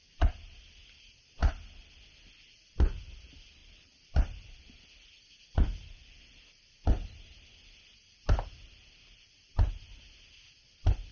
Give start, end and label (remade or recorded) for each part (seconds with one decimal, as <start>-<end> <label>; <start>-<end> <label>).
0.0-3.6 recorded; 3.6-6.4 remade; 6.4-11.1 recorded